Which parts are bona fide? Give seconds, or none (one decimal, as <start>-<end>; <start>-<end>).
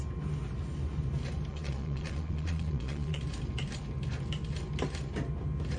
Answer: 0.0-1.5; 3.2-5.8